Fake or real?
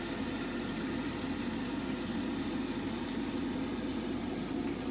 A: real